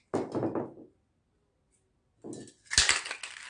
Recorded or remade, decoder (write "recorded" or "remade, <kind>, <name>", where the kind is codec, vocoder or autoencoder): recorded